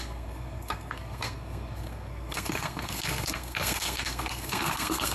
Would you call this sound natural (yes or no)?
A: no